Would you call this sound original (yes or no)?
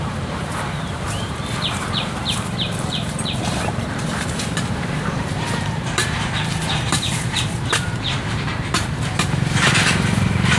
no